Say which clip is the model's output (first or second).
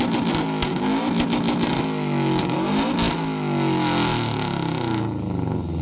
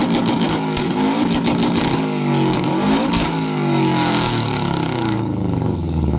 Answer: second